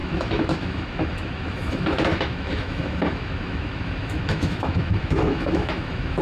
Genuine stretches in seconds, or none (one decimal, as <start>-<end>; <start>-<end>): none

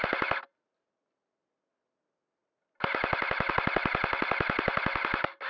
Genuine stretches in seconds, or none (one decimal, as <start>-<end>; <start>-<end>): 0.0-5.5

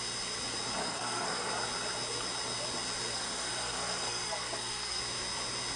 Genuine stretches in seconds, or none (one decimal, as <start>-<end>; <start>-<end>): 0.0-0.8; 1.5-3.1; 5.0-5.8

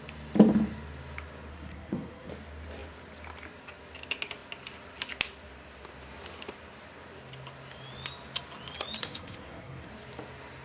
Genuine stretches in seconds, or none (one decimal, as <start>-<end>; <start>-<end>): 0.0-1.5; 2.3-9.0; 9.9-10.6

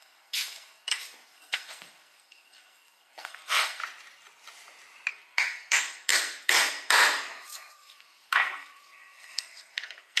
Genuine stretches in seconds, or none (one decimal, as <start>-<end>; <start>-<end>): 3.8-5.1

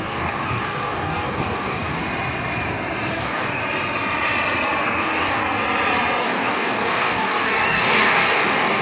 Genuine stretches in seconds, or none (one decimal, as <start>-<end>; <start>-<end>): 2.0-3.1; 3.6-4.8; 5.4-6.2

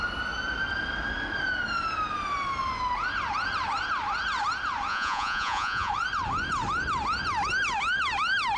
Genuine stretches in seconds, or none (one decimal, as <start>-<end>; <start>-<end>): 0.0-4.9; 5.9-8.6